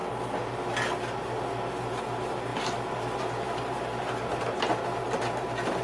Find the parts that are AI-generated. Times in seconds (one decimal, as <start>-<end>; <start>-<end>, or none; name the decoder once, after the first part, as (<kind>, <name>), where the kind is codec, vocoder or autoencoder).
none